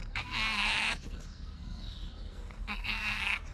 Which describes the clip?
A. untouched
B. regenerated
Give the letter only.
B